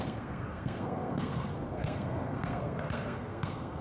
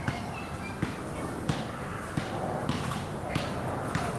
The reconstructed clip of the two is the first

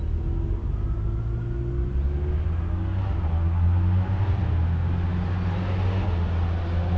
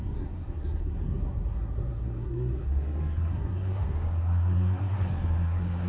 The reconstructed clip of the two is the second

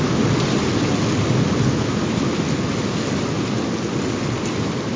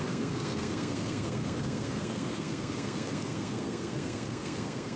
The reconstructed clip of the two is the second